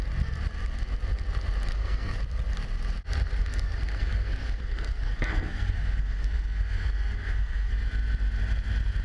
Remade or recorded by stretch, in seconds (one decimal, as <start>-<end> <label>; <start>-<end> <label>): 0.0-1.7 recorded; 1.7-2.2 remade; 2.2-3.4 recorded; 3.4-7.7 remade; 7.7-9.0 recorded